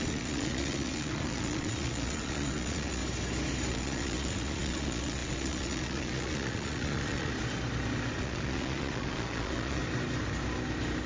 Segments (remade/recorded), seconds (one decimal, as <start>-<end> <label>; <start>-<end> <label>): 0.0-3.0 remade; 3.0-3.7 recorded; 3.7-7.3 remade; 7.3-8.2 recorded; 8.2-9.8 remade; 9.8-11.1 recorded